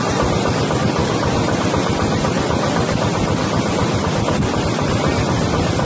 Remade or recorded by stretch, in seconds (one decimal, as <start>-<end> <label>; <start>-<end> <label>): 0.0-1.0 recorded; 1.0-4.1 remade; 4.1-5.9 recorded

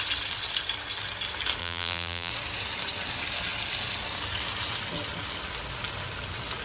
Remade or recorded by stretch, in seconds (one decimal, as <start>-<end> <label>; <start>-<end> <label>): 0.0-1.6 recorded; 1.6-2.3 remade; 2.3-6.6 recorded

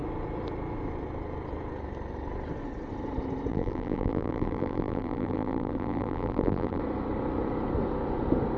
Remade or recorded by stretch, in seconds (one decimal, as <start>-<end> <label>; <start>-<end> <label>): 0.0-3.5 recorded; 3.5-6.8 remade; 6.8-8.6 recorded

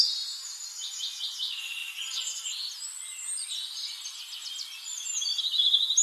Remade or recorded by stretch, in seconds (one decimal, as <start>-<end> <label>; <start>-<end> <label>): 0.0-6.0 recorded

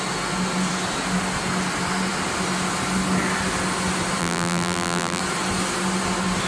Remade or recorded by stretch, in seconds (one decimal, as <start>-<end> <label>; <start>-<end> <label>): 0.0-4.2 recorded; 4.2-5.2 remade; 5.2-6.5 recorded

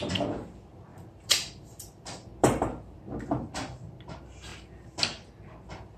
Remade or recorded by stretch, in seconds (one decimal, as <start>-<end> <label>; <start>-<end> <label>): 0.0-0.9 recorded; 0.9-3.0 remade; 3.0-6.0 recorded